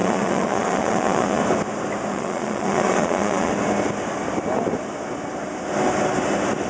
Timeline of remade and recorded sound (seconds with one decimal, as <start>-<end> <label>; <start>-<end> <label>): 0.0-1.4 remade; 1.4-2.1 recorded; 2.1-3.5 remade; 3.5-6.7 recorded